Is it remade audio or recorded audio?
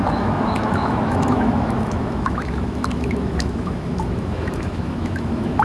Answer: remade